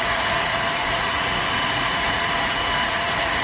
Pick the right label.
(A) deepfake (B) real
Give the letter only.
A